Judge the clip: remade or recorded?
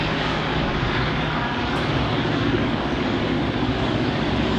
remade